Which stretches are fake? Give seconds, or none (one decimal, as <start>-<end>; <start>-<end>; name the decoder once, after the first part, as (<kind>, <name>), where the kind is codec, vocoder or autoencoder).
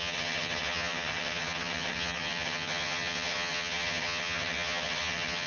0.0-5.5 (vocoder, HiFi-GAN)